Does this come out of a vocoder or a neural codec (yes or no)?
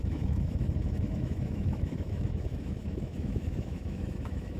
yes